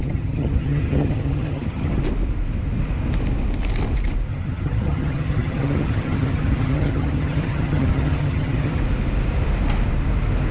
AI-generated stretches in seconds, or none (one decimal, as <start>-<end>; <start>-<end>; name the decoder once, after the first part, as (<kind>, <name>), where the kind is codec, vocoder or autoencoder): 0.0-2.0 (vocoder, HiFi-GAN); 4.3-8.8